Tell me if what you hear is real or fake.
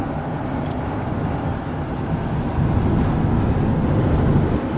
real